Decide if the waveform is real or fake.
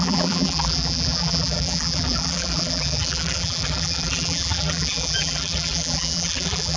fake